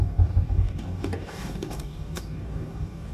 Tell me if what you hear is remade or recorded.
remade